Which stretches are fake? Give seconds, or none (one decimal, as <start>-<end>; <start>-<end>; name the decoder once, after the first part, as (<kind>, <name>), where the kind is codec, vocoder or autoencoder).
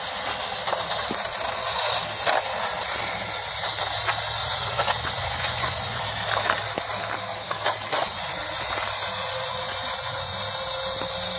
4.4-6.0 (vocoder, Vocos); 7.9-8.4; 9.2-10.4